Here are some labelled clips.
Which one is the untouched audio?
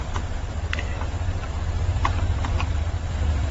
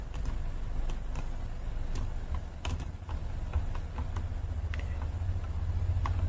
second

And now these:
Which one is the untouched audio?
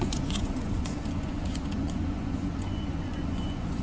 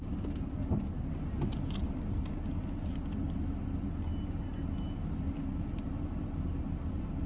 second